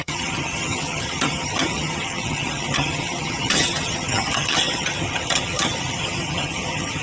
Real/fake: fake